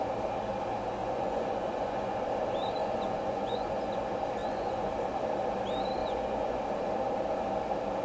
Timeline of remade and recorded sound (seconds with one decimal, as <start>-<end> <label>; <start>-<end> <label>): 0.0-1.0 recorded; 1.0-2.2 remade; 2.2-2.8 recorded; 2.8-4.0 remade; 4.0-4.4 recorded; 4.4-4.9 remade; 4.9-6.0 recorded; 6.0-6.6 remade; 6.6-8.0 recorded